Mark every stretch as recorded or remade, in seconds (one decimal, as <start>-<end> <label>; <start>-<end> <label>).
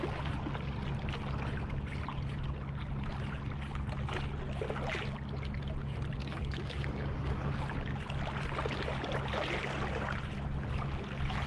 0.0-6.2 recorded; 6.2-7.5 remade; 7.5-11.5 recorded